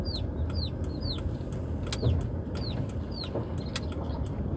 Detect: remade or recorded recorded